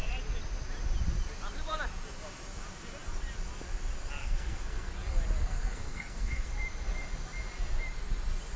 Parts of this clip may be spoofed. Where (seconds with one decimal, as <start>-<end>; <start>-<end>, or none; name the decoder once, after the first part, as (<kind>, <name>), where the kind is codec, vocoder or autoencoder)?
4.2-4.9 (codec, SNAC); 5.4-6.5